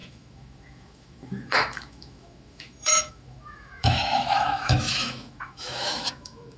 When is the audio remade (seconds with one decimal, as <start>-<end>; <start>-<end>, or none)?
0.0-6.6